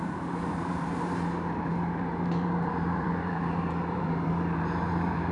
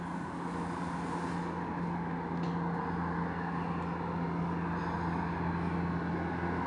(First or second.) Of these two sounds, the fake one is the first